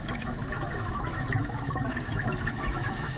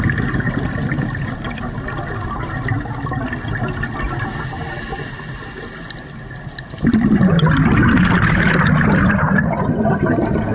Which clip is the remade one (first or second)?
first